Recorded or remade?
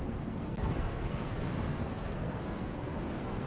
remade